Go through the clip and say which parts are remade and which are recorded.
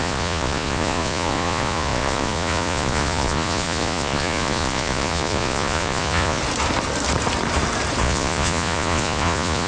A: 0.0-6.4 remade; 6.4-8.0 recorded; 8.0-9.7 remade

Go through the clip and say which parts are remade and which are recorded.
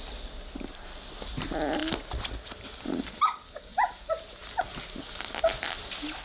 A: 0.0-6.2 recorded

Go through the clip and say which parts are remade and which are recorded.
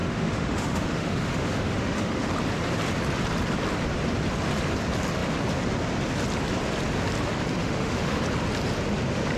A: 0.0-2.3 remade; 2.3-7.6 recorded; 7.6-8.2 remade; 8.2-9.4 recorded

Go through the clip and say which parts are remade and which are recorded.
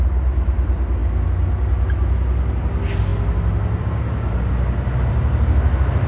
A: 0.0-6.1 recorded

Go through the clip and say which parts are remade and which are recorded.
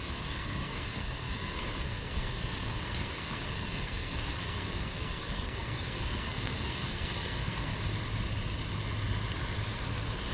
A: 0.0-7.7 remade; 7.7-10.3 recorded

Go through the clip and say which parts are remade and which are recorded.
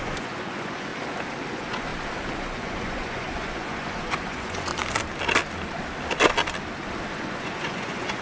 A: 0.0-0.9 remade; 0.9-1.5 recorded; 1.5-1.9 remade; 1.9-2.4 recorded; 2.4-4.7 remade; 4.7-7.1 recorded; 7.1-8.2 remade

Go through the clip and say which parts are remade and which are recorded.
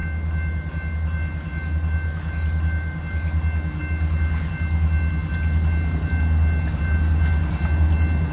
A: 0.0-8.3 recorded